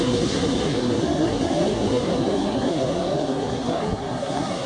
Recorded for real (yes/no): no